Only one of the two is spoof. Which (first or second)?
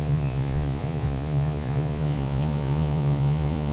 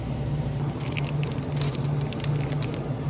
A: first